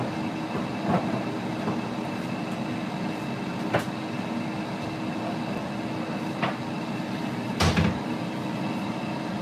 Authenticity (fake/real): real